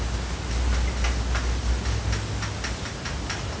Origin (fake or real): real